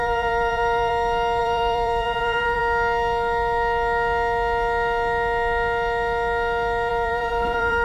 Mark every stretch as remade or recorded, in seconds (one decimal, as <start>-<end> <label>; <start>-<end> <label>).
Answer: 0.0-0.9 remade; 0.9-1.4 recorded; 1.4-2.6 remade; 2.6-6.9 recorded; 6.9-7.8 remade